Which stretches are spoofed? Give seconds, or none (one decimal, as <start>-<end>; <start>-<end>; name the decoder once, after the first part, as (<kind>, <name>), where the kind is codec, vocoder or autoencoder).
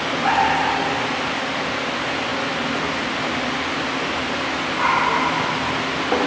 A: none